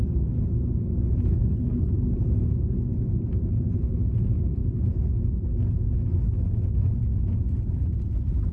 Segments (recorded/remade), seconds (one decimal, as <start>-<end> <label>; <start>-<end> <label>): 0.0-1.3 recorded; 1.3-1.9 remade; 1.9-8.5 recorded